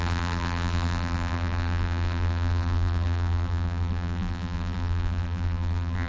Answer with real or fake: fake